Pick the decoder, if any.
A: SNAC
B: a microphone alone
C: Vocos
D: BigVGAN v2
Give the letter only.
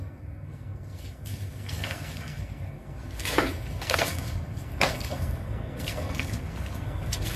A